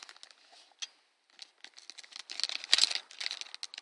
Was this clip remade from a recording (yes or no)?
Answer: no